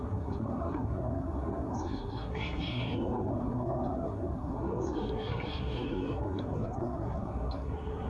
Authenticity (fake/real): fake